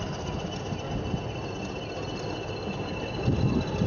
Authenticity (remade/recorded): recorded